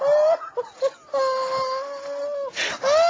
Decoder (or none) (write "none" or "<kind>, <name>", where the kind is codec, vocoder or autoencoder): none